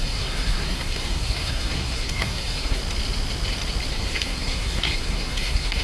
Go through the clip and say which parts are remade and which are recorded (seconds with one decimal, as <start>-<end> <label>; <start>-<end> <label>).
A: 0.0-2.8 remade; 2.8-3.9 recorded; 3.9-5.8 remade